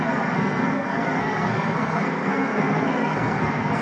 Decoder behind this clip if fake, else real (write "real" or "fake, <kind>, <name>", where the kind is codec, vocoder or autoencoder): fake, codec, SNAC